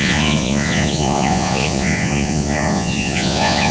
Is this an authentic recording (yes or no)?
no